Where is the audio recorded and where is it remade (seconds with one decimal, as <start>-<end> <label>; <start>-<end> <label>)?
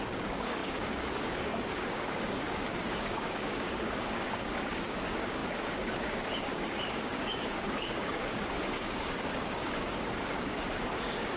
0.0-11.4 remade